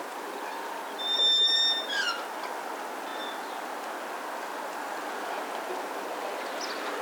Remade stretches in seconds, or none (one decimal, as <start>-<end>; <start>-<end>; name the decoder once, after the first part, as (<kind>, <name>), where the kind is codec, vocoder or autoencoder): none

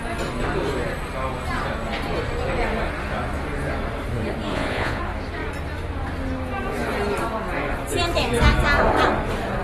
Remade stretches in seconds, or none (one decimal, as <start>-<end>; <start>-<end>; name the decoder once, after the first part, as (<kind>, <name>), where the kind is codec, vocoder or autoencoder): 4.5-5.0 (vocoder, Vocos)

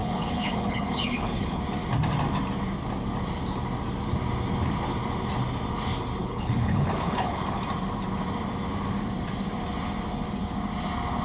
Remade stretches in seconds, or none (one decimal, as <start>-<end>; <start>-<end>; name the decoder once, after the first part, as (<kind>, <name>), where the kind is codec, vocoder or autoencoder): 0.0-1.6 (codec, HILCodec); 6.2-7.6